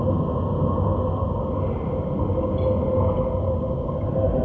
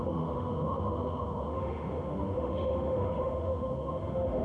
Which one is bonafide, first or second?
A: first